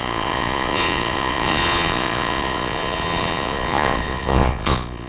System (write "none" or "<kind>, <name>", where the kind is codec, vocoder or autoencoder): vocoder, Vocos